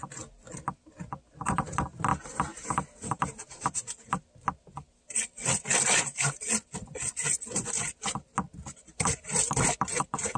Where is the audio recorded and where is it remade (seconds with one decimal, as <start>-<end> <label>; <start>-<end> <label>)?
0.0-2.5 recorded; 2.5-4.2 remade; 4.2-10.4 recorded